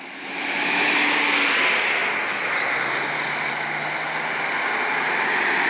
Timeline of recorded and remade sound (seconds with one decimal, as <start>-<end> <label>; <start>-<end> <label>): 0.0-5.7 recorded